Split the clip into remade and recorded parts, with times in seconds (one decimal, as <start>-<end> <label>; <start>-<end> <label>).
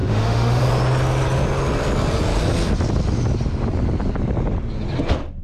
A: 0.0-0.6 remade; 0.6-5.4 recorded